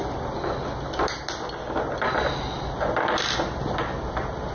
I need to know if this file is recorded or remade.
recorded